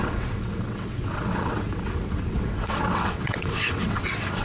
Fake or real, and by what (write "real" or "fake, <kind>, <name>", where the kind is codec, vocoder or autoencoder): fake, vocoder, WaveNeXt